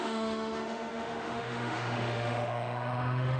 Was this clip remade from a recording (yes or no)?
yes